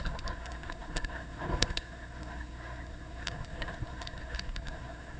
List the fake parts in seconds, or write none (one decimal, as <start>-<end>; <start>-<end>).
0.0-5.2